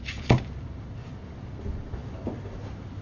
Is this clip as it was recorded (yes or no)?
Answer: yes